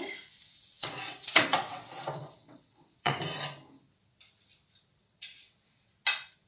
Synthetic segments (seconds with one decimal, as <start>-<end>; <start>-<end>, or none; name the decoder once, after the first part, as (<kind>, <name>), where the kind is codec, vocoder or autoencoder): 0.4-3.2 (vocoder, WaveNeXt); 5.0-5.9